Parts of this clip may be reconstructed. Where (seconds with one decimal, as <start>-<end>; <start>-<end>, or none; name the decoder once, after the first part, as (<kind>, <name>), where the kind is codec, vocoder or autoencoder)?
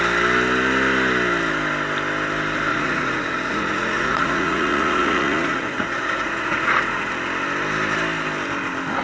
2.7-7.1 (vocoder, Vocos)